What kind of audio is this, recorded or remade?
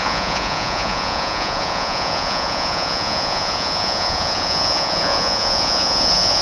remade